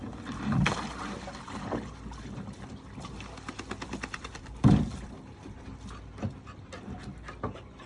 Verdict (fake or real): real